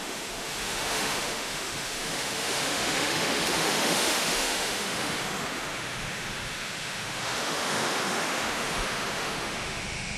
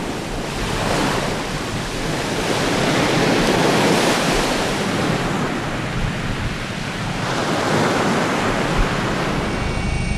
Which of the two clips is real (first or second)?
second